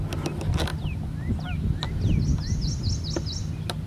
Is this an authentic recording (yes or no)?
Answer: yes